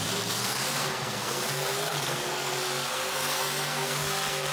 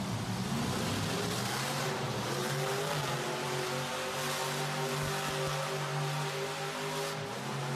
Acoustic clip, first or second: second